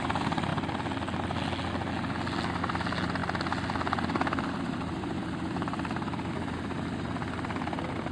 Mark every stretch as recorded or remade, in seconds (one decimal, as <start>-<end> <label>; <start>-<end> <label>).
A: 0.0-0.5 remade; 0.5-2.6 recorded; 2.6-3.2 remade; 3.2-4.6 recorded; 4.6-8.1 remade